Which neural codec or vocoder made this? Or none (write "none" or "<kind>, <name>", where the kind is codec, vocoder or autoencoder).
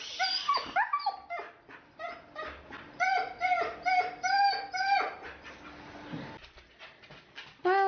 none